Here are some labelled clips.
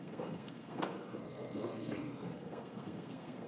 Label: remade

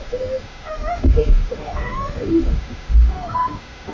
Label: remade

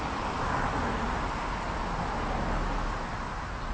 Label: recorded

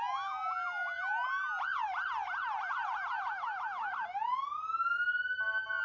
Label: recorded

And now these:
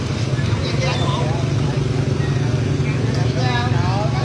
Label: recorded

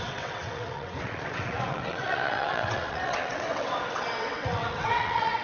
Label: remade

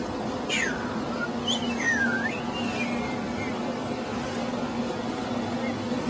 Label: recorded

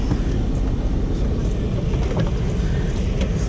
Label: recorded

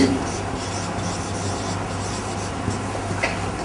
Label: recorded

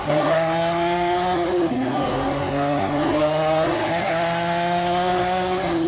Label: remade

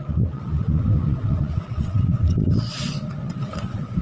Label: remade